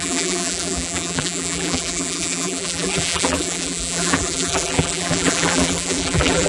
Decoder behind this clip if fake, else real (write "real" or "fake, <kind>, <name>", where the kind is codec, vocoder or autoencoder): fake, vocoder, BigVGAN v2